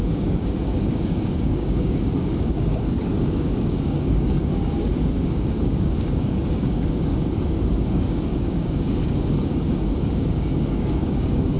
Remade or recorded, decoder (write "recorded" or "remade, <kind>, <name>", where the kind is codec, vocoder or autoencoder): remade, codec, DAC